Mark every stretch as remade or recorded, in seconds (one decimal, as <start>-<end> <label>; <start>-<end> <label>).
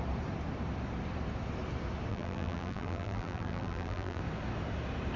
0.0-2.1 recorded; 2.1-4.2 remade; 4.2-5.2 recorded